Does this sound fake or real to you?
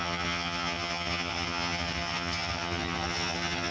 fake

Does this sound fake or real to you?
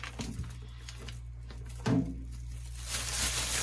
real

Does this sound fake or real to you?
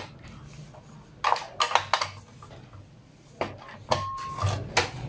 real